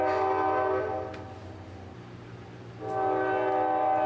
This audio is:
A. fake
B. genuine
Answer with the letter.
B